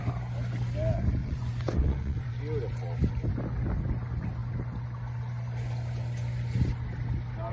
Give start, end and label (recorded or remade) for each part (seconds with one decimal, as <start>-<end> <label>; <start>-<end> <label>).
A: 0.0-1.2 recorded; 1.2-2.3 remade; 2.3-7.5 recorded